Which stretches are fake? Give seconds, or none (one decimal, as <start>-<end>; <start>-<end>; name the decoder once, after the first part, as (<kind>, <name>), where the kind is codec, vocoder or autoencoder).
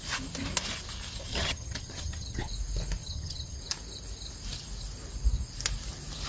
1.3-2.5 (vocoder, HiFi-GAN); 3.0-3.6